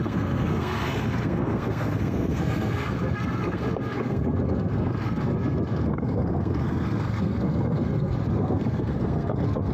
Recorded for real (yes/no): no